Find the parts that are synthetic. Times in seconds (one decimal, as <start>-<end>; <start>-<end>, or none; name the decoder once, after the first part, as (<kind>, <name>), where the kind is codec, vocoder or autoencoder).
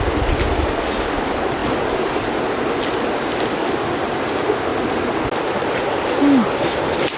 none